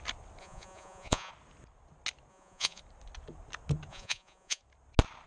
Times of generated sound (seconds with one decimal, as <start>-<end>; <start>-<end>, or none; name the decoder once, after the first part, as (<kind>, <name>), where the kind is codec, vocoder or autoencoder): 0.4-1.3 (vocoder, Vocos); 2.3-2.8; 3.9-4.6